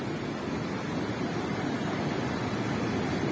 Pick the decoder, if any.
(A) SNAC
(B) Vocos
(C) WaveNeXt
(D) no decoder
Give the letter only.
D